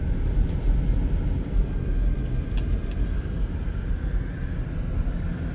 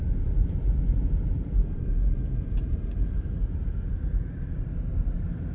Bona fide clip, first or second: first